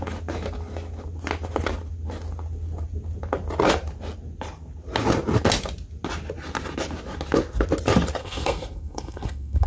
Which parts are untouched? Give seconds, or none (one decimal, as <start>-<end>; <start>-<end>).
0.0-8.2